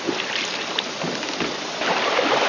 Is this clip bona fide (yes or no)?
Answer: yes